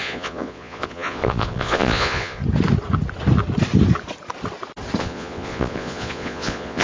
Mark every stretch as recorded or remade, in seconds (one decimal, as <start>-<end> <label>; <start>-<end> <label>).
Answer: 0.0-2.4 remade; 2.4-5.0 recorded; 5.0-6.8 remade